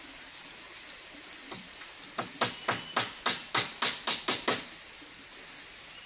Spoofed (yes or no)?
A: no